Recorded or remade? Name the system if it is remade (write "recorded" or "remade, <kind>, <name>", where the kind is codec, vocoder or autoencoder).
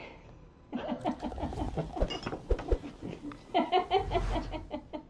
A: recorded